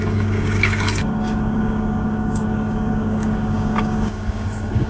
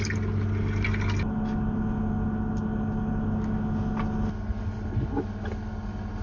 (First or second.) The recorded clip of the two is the second